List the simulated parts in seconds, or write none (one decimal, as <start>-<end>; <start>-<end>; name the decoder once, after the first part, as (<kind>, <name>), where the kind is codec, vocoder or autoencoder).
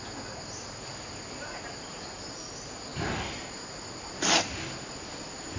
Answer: none